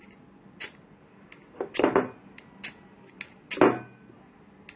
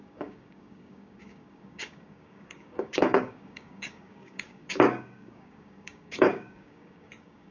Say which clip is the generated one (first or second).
second